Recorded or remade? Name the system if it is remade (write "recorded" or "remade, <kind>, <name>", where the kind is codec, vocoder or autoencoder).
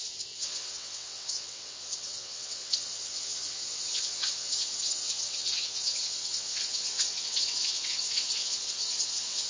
remade, vocoder, WaveNeXt